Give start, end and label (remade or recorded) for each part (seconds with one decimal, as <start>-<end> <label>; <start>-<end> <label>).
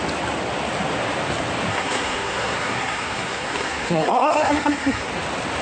0.0-1.7 recorded; 1.7-5.1 remade; 5.1-5.6 recorded